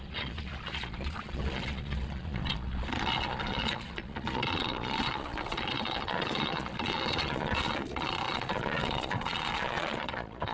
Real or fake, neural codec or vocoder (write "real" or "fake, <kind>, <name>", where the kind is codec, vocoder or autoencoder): fake, vocoder, Vocos